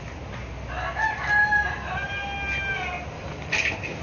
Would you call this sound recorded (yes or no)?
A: yes